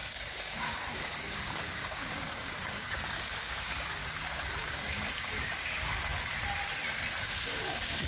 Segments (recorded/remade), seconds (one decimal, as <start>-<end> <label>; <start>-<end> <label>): 0.0-4.0 remade; 4.0-4.6 recorded; 4.6-6.1 remade; 6.1-7.2 recorded; 7.2-8.1 remade